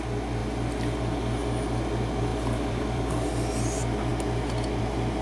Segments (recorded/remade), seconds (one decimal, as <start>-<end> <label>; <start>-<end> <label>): 0.0-2.3 recorded; 2.3-3.1 remade; 3.1-5.2 recorded